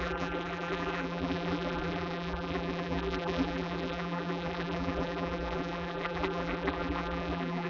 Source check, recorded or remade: remade